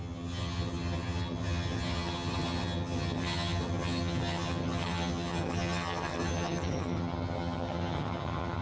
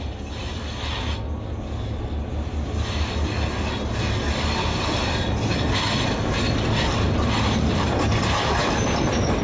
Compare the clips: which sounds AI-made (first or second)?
first